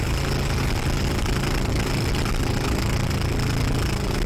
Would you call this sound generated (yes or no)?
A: no